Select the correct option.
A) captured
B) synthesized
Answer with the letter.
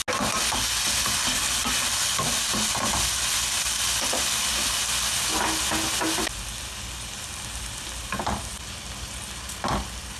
A